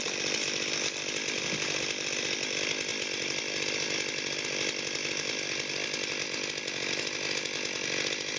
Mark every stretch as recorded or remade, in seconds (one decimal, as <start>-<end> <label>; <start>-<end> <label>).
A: 0.0-8.4 recorded